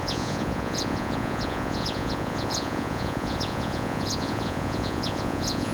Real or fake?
fake